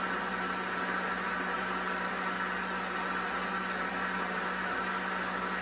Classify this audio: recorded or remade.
recorded